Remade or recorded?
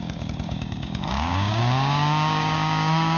remade